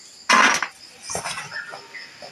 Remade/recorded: recorded